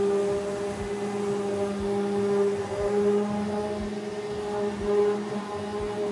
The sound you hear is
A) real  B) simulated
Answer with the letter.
A